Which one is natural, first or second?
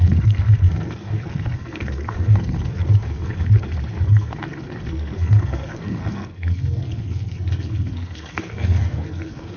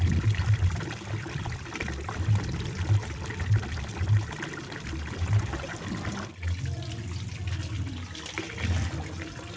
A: second